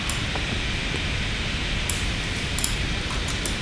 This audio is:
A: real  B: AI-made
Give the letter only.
A